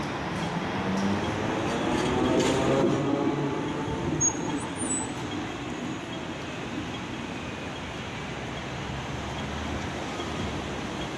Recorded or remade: recorded